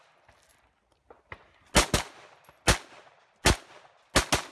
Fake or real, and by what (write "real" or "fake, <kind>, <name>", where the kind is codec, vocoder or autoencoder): real